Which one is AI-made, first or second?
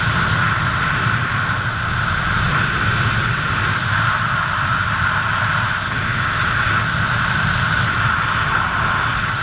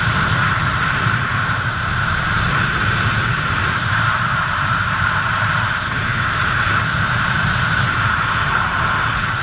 second